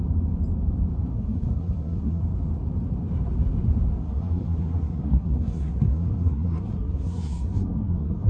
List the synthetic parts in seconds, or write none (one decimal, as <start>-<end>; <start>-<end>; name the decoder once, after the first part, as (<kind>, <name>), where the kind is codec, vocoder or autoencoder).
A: 1.1-2.2 (codec, SNAC); 4.0-8.3